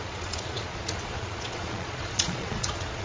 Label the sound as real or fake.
fake